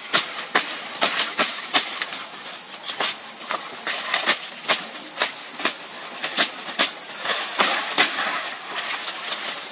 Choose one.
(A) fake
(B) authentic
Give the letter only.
A